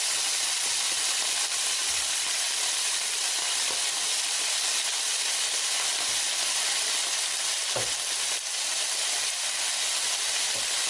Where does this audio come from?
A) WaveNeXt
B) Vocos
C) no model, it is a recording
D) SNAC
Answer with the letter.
C